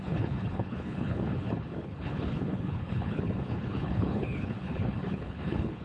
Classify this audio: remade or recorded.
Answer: remade